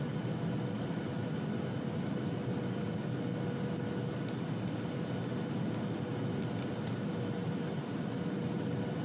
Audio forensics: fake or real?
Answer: real